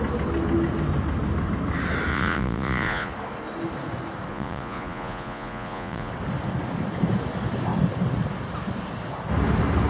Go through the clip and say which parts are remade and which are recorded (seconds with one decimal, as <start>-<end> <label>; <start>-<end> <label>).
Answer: 0.0-2.1 recorded; 2.1-3.1 remade; 3.1-4.3 recorded; 4.3-6.1 remade; 6.1-9.9 recorded